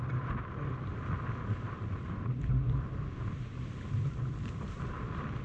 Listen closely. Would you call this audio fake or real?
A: fake